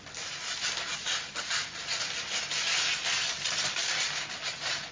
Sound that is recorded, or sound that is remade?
recorded